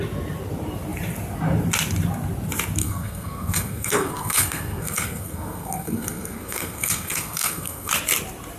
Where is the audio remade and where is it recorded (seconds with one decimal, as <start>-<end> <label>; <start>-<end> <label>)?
0.0-2.8 recorded; 2.8-7.9 remade; 7.9-8.6 recorded